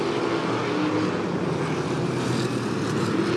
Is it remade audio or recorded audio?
recorded